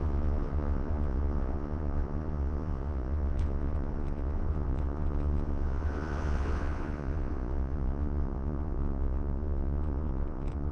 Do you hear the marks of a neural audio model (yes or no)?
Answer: yes